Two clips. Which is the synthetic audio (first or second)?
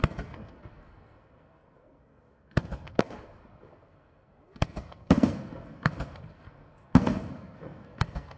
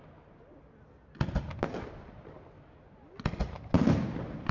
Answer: first